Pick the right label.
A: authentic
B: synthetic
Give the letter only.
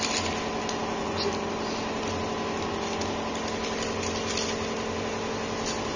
A